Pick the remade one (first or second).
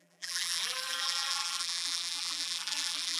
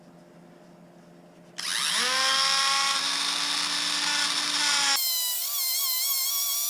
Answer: first